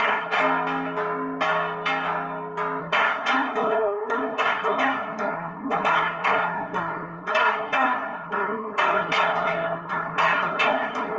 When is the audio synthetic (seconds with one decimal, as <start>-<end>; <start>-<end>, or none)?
0.0-0.4; 2.8-11.2